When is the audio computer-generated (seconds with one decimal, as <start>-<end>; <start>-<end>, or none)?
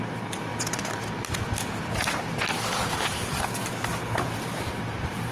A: 0.0-0.5; 3.7-5.3